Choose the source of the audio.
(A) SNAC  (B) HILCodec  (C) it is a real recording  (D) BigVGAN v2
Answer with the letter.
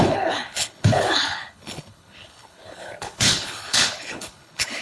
B